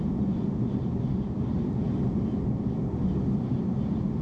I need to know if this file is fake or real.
real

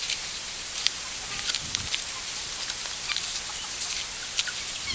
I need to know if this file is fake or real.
real